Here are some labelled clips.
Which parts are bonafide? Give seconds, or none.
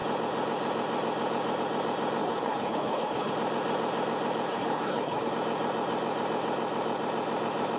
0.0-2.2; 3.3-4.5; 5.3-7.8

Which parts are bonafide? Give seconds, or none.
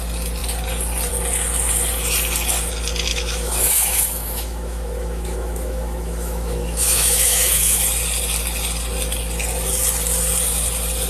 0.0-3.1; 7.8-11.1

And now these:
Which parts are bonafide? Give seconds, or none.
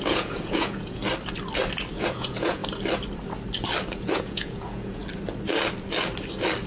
1.0-1.9; 2.6-4.1; 5.0-6.7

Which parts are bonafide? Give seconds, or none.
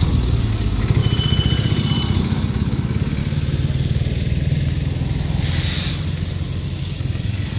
1.0-2.2; 3.2-6.8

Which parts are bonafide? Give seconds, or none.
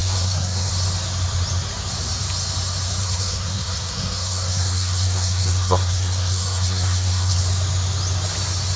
0.7-3.0; 7.4-8.8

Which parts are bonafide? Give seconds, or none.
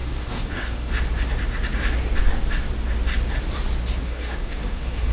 0.9-4.0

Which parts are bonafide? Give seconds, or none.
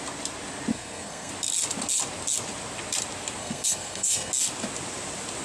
0.0-0.7; 1.3-3.4; 4.3-5.4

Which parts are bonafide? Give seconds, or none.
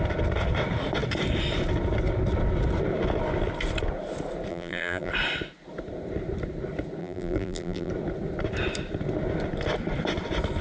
0.0-4.5; 5.1-7.0; 7.9-10.6